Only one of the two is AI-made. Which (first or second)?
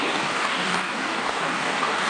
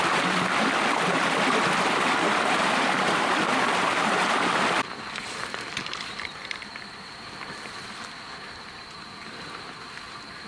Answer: first